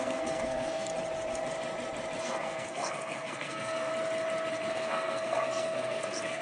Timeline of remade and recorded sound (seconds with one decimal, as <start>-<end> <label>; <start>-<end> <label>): 0.0-0.9 remade; 0.9-2.2 recorded; 2.2-3.9 remade; 3.9-4.7 recorded; 4.7-6.4 remade